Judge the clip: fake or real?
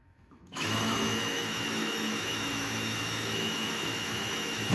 fake